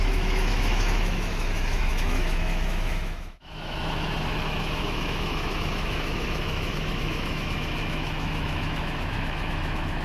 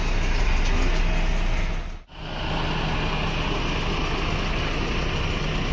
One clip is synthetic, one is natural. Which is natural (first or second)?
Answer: second